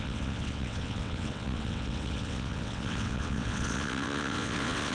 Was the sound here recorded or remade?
remade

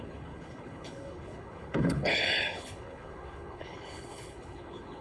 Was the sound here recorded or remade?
remade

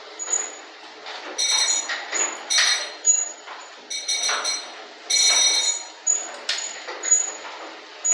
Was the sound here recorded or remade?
recorded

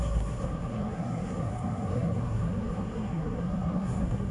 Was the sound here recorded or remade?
remade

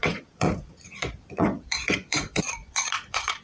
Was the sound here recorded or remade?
remade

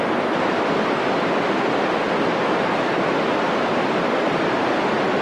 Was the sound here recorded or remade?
remade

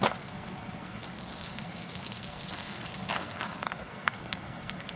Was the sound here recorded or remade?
remade